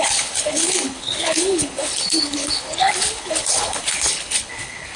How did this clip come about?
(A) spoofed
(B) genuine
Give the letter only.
A